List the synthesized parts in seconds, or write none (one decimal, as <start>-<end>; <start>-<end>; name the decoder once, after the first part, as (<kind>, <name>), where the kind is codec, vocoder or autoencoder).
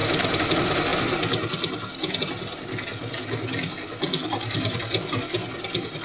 0.0-0.5 (vocoder, BigVGAN v2); 4.2-4.8